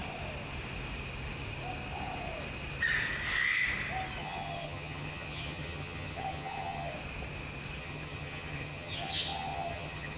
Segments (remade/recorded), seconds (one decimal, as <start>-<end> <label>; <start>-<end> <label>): 0.0-4.2 recorded; 4.2-6.9 remade; 6.9-7.8 recorded; 7.8-10.2 remade